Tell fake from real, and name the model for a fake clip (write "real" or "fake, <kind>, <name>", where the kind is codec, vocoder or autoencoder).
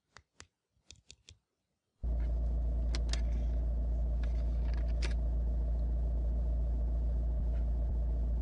real